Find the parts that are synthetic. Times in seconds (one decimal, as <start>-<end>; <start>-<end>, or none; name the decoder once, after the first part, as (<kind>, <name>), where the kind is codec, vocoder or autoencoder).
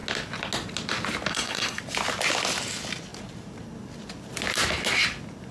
1.3-1.8 (codec, SNAC)